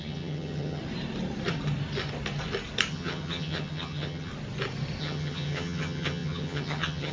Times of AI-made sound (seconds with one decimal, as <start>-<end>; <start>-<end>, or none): 0.0-0.8; 2.9-4.3; 5.0-7.1